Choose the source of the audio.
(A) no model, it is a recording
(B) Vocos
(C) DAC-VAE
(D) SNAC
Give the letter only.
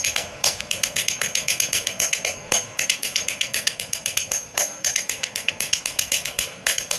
D